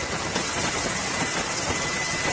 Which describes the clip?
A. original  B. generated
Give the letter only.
A